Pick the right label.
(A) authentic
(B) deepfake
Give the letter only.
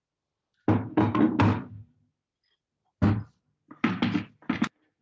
A